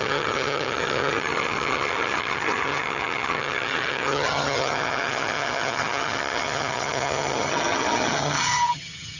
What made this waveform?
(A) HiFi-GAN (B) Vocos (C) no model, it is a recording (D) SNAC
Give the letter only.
A